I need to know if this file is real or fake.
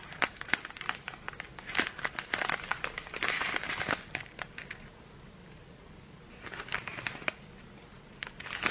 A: real